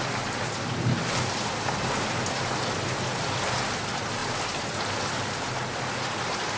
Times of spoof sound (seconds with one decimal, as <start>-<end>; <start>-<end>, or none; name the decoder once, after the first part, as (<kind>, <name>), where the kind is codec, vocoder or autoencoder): none